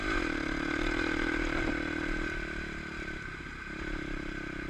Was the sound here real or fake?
real